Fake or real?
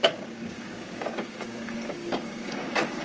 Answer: fake